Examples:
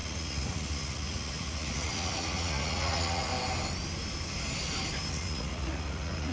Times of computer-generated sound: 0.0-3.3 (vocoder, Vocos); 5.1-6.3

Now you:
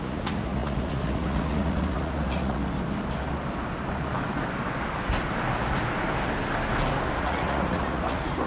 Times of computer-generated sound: 0.0-2.6 (vocoder, Vocos); 7.2-8.5

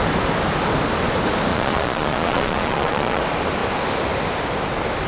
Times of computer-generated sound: 1.5-3.2 (vocoder, Vocos)

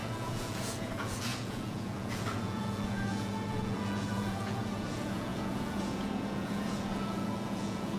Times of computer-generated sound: 0.0-8.0 (vocoder, Vocos)

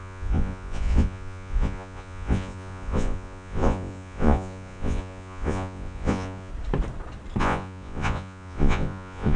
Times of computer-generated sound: 0.0-6.5 (vocoder, Vocos); 7.4-9.4

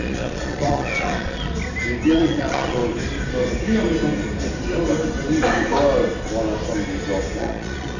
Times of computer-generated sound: 0.0-1.5 (vocoder, Vocos); 2.1-2.8; 7.4-8.0

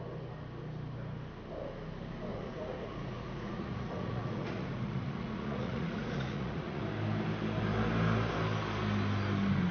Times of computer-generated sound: 2.3-6.8 (vocoder, Vocos)

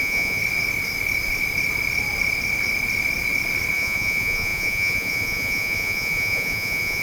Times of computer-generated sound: 0.0-0.4 (vocoder, Vocos); 3.7-7.0